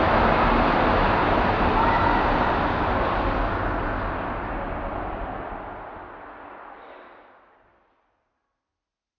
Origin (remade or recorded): recorded